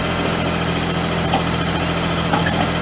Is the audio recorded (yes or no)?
yes